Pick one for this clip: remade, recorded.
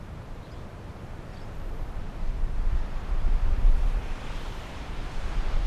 remade